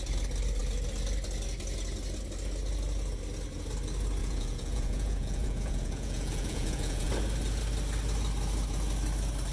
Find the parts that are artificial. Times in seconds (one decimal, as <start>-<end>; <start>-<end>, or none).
4.2-7.1